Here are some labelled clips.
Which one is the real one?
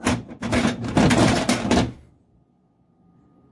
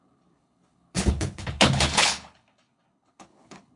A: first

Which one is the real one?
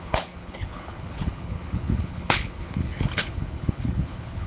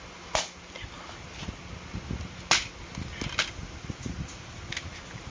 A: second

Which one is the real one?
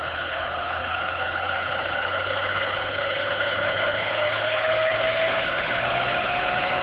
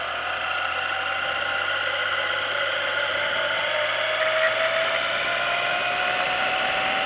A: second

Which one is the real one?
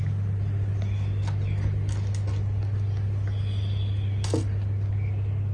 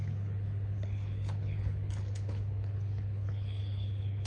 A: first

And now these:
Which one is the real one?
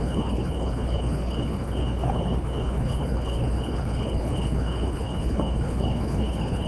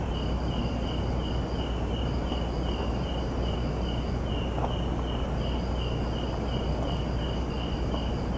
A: second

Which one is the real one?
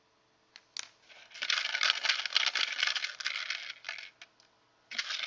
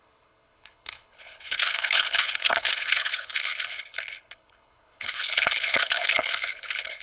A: first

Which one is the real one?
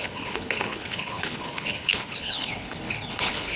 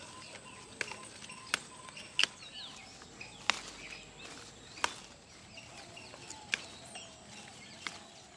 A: second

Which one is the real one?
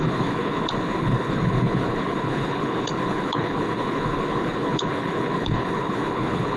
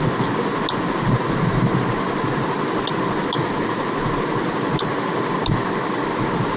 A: second